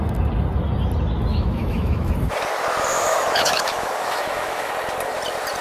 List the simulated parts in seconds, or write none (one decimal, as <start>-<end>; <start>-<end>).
1.3-2.1; 2.9-4.7